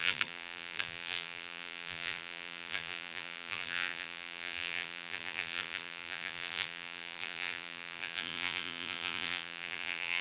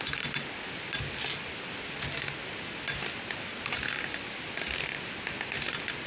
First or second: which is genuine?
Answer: second